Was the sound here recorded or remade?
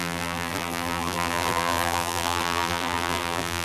remade